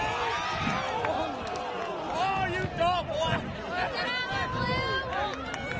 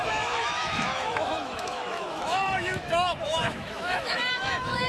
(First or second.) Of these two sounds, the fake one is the second